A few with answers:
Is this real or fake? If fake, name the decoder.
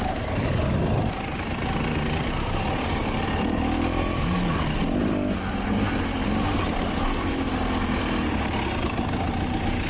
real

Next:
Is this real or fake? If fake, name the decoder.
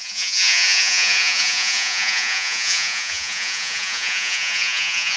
fake, vocoder, Vocos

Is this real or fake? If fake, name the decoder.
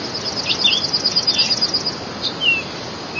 real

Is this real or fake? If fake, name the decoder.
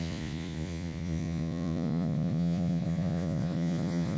fake, vocoder, Vocos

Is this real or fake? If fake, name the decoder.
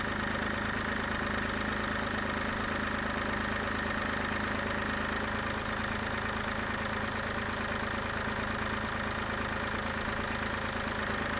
real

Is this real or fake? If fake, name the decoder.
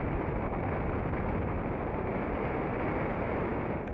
real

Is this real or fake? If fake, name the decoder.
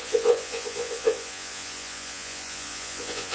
fake, vocoder, Vocos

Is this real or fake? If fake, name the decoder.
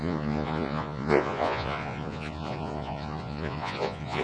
fake, vocoder, Vocos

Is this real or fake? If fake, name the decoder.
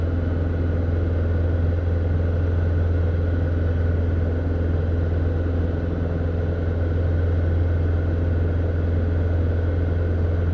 real